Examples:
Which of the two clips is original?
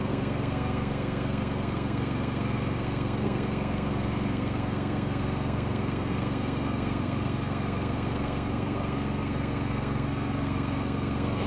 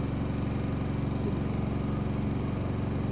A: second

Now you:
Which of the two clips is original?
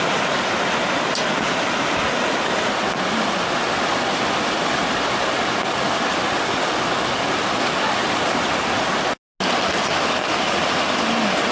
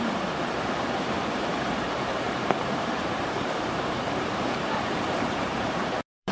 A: first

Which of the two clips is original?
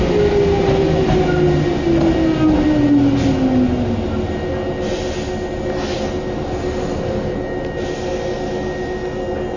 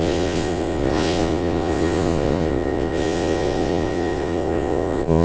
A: first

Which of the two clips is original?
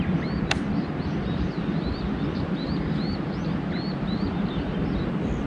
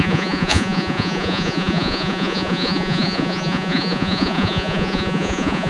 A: first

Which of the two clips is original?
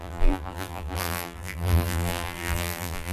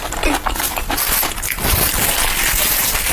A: second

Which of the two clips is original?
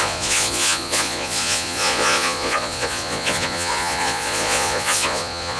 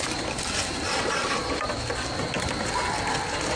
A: second